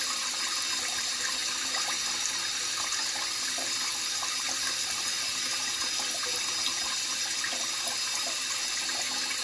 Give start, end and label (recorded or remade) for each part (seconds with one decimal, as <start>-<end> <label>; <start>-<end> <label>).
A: 0.0-9.4 recorded